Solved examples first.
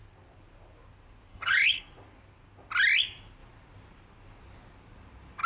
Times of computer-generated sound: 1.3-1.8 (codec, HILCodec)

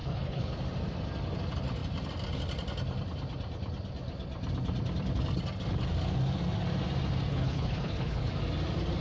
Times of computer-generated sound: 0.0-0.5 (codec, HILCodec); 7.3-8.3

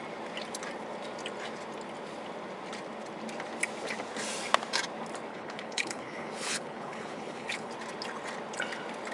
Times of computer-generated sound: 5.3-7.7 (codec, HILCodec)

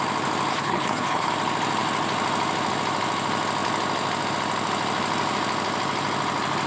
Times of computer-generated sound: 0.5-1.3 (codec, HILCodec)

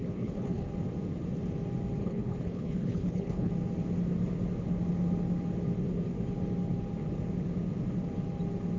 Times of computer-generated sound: 0.0-0.7 (codec, HILCodec); 2.0-3.5

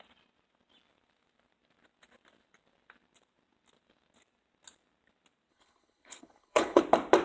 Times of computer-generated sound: 5.5-6.8 (codec, HILCodec)

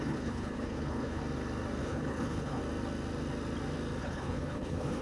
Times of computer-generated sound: 0.0-1.2 (codec, HILCodec); 1.8-2.6; 4.0-5.0

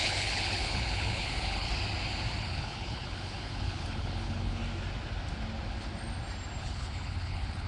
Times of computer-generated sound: 0.0-1.7 (codec, HILCodec); 2.4-4.6; 6.6-7.7